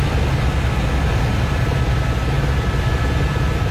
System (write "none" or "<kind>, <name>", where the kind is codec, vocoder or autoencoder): none